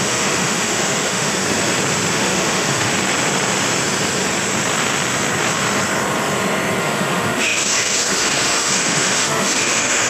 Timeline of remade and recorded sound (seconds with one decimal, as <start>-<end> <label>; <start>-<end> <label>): 0.0-1.4 remade; 1.4-2.1 recorded; 2.1-2.9 remade; 2.9-6.8 recorded; 6.8-10.1 remade